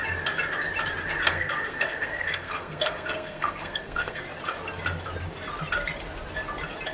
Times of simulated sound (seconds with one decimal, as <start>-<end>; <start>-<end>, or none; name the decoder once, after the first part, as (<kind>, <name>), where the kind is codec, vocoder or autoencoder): 1.3-4.2 (codec, SNAC)